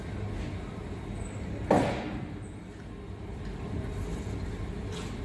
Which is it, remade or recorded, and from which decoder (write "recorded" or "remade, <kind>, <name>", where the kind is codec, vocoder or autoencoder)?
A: recorded